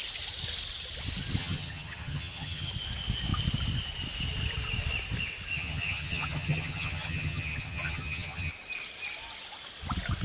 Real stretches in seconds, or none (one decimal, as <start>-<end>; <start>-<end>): 0.0-1.4; 2.7-5.5; 8.5-10.2